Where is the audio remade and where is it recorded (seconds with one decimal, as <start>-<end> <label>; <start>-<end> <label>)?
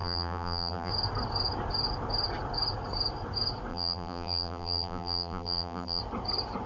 0.0-0.9 remade; 0.9-3.7 recorded; 3.7-6.0 remade; 6.0-6.7 recorded